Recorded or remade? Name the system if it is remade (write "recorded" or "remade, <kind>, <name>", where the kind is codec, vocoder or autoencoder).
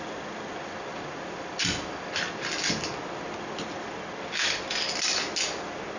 recorded